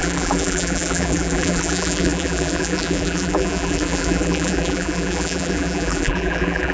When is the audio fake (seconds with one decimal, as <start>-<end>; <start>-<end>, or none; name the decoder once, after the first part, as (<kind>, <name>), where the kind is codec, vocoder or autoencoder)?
0.0-6.7 (vocoder, BigVGAN v2)